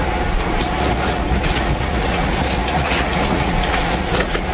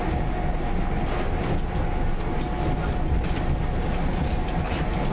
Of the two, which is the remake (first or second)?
first